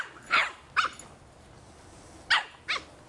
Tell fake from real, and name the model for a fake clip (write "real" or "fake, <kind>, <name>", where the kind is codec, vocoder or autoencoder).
real